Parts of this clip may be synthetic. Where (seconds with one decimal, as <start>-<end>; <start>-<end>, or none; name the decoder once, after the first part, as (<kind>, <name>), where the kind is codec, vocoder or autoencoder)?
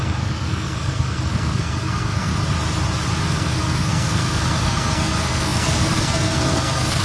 0.0-2.3 (codec, SNAC); 3.3-7.0